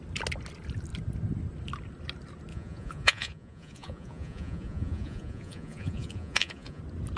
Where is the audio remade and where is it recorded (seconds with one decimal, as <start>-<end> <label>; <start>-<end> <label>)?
0.0-2.5 recorded; 2.5-6.8 remade; 6.8-7.2 recorded